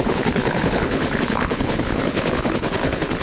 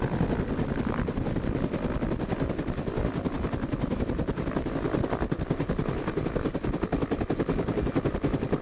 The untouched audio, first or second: second